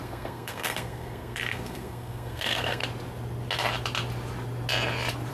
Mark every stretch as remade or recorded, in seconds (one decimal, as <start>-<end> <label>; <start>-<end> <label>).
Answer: 0.0-2.8 remade; 2.8-5.3 recorded